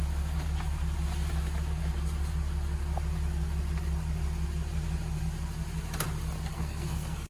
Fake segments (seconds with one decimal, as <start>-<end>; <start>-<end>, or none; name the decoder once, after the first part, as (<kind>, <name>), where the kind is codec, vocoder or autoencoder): 6.5-7.3 (codec, SNAC)